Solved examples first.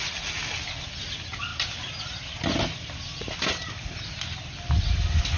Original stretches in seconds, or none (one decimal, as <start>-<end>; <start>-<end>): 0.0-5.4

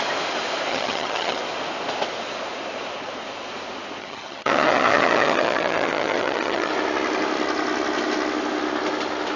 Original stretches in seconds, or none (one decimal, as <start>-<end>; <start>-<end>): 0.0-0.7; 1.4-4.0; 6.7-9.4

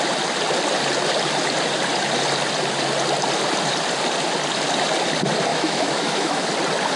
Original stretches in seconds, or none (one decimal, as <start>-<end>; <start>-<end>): 0.0-5.5; 6.5-7.0

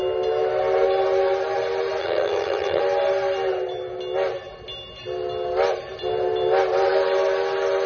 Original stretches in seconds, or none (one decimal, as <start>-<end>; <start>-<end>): 0.0-2.0; 2.8-7.9

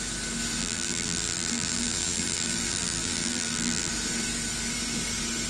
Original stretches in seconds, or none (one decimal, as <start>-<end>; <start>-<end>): 0.0-0.6; 3.9-5.5

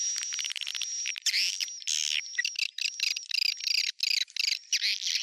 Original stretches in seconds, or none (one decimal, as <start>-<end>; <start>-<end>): 0.0-5.2

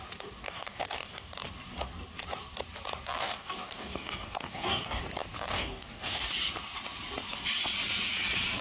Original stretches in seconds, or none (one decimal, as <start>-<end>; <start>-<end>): 0.0-0.4; 1.3-3.2; 5.0-5.5; 6.3-8.6